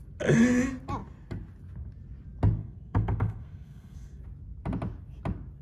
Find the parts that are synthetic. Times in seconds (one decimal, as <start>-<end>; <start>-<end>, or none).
2.6-4.2